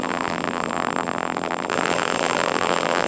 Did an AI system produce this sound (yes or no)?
yes